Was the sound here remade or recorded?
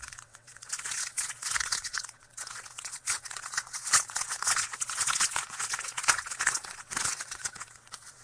remade